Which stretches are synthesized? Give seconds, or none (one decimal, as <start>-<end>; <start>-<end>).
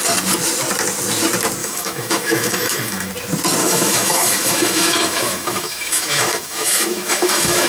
1.6-3.1; 3.6-7.7